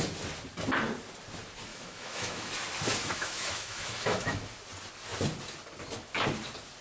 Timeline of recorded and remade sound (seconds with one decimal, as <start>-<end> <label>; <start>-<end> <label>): 0.0-1.7 recorded; 1.7-2.5 remade; 2.5-3.0 recorded; 3.0-4.4 remade; 4.4-6.8 recorded